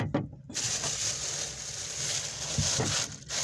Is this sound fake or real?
real